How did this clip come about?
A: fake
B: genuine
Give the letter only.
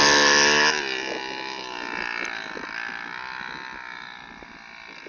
B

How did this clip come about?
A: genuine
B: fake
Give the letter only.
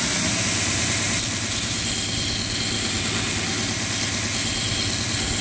A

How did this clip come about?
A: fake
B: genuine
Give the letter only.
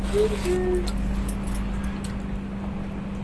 B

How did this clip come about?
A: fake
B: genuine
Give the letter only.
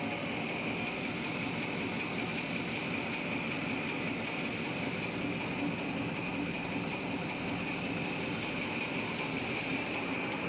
B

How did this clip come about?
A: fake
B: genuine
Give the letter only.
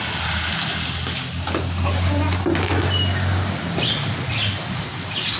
B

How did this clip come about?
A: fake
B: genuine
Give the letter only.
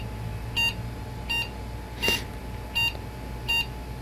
B